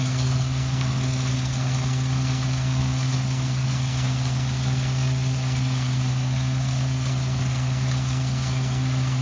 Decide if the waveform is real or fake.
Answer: fake